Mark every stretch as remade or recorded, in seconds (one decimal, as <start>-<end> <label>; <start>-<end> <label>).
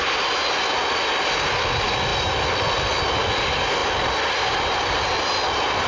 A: 0.0-5.9 recorded